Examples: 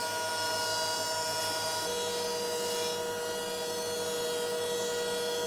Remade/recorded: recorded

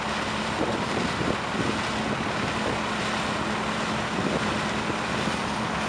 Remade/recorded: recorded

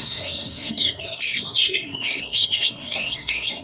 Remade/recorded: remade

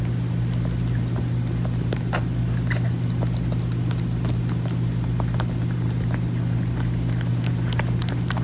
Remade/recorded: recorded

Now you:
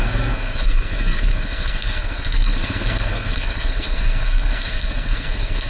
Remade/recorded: remade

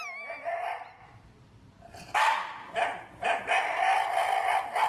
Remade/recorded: recorded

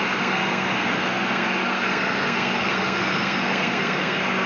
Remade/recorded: remade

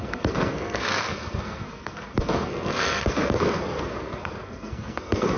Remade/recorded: remade